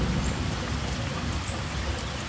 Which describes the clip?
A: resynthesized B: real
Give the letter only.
B